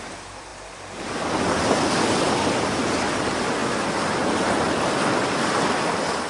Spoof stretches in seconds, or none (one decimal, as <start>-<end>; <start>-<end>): none